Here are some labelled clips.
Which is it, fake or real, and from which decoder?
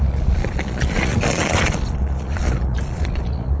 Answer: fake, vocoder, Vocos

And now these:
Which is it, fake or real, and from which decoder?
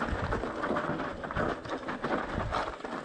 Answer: real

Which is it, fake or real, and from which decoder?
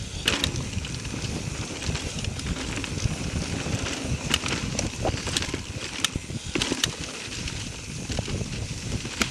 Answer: real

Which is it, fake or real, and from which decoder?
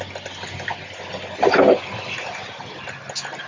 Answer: real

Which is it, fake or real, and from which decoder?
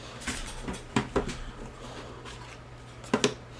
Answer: real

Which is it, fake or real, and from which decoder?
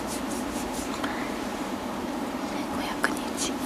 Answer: fake, vocoder, BigVGAN v2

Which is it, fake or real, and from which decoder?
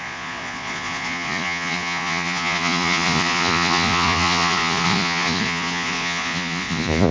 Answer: fake, vocoder, Vocos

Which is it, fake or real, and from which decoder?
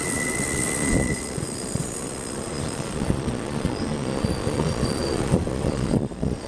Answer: fake, vocoder, Vocos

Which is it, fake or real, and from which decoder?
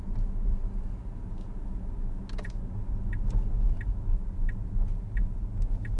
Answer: real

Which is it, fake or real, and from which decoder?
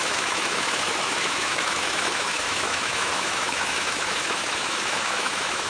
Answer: fake, autoencoder, DAC-VAE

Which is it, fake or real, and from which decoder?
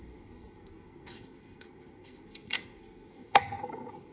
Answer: fake, codec, SNAC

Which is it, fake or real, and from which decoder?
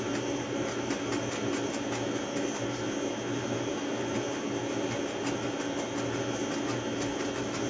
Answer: real